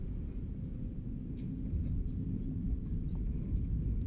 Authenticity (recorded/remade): remade